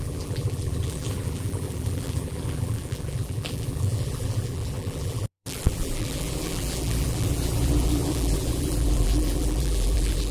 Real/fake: fake